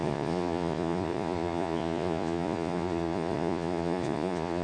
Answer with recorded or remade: remade